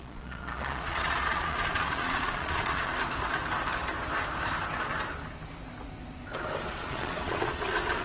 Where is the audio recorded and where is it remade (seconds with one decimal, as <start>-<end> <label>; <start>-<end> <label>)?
0.0-2.9 remade; 2.9-6.7 recorded; 6.7-8.0 remade